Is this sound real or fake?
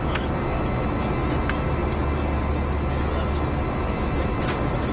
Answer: real